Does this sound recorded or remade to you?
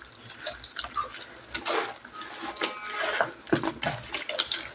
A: recorded